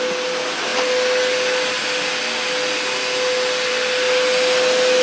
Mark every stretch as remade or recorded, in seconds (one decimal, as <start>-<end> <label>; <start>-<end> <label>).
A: 0.0-5.0 recorded